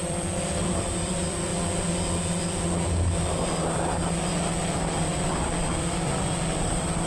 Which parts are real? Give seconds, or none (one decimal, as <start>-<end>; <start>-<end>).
1.5-5.8